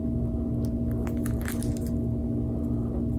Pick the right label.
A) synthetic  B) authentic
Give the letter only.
B